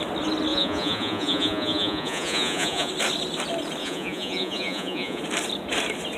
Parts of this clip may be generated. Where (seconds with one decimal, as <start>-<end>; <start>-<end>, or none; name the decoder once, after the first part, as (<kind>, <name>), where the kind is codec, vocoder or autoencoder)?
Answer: 0.5-2.9 (vocoder, Vocos); 3.8-5.2